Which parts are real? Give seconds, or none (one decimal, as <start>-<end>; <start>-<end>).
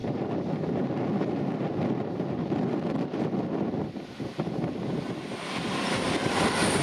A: 0.9-6.8